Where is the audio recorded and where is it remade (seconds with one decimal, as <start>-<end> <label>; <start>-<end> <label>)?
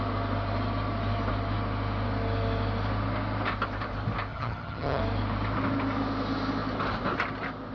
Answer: 0.0-4.3 recorded; 4.3-5.0 remade; 5.0-7.7 recorded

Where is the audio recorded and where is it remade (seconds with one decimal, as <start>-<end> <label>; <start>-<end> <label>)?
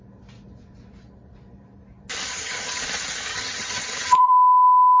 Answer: 0.0-2.3 recorded; 2.3-2.8 remade; 2.8-3.3 recorded; 3.3-4.3 remade; 4.3-5.0 recorded